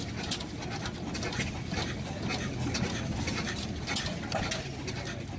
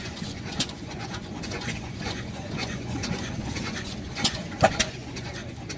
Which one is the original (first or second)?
first